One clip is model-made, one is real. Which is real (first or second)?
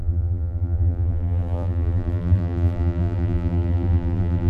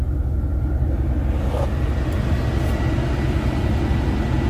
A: second